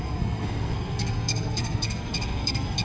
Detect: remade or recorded remade